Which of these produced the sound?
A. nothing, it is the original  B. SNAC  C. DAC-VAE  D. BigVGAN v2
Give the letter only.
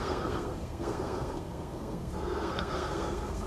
B